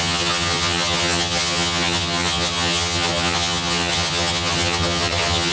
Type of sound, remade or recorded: remade